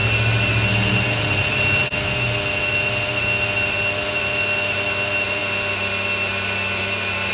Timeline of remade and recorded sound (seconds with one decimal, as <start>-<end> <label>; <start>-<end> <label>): 0.0-7.3 recorded